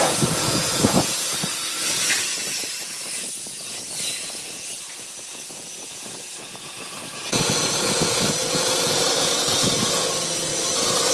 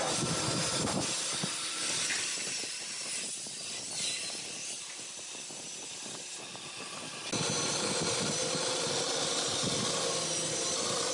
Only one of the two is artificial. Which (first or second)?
first